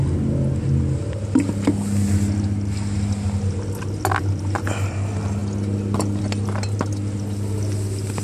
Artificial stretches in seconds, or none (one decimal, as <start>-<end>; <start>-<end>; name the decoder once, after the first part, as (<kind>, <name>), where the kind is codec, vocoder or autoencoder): none